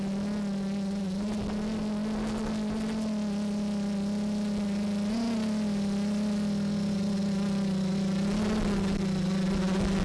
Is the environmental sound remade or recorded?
recorded